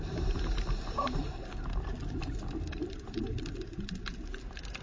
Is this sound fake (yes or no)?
yes